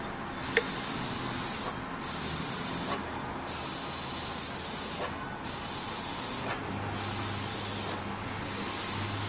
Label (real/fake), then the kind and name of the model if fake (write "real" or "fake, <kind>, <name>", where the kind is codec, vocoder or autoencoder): real